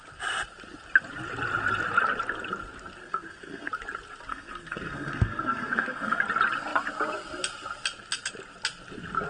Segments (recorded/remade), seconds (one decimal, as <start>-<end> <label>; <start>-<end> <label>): 0.0-3.0 recorded; 3.0-3.7 remade; 3.7-4.3 recorded; 4.3-6.2 remade; 6.2-9.3 recorded